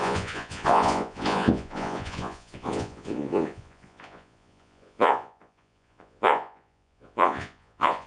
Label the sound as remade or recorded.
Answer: remade